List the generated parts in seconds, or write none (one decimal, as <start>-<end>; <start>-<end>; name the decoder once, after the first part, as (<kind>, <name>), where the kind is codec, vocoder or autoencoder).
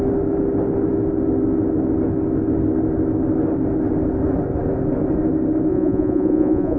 5.7-6.8 (vocoder, Vocos)